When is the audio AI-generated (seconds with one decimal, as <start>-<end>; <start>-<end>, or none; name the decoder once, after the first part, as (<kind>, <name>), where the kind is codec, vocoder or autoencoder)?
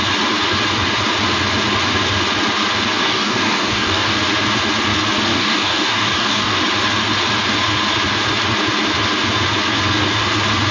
3.0-4.2 (codec, DAC); 5.3-6.6